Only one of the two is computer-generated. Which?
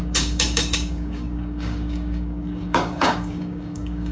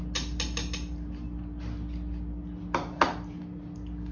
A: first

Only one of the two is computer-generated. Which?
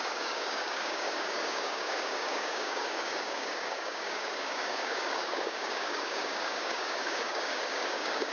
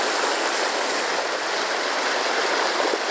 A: first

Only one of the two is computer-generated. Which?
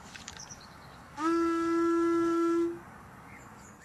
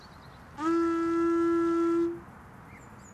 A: first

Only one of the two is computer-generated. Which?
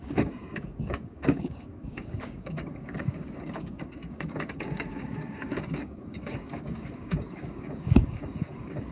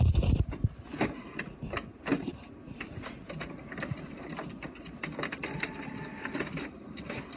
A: first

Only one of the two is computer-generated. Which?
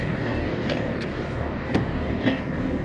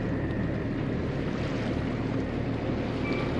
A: first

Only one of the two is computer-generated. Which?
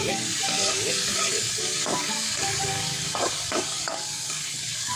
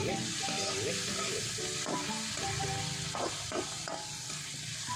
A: first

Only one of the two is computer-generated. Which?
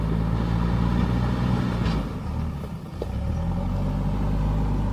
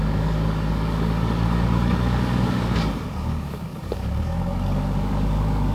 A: second